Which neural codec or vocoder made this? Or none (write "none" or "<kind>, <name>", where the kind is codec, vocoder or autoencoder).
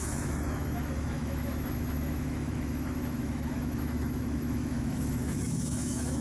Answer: autoencoder, DAC-VAE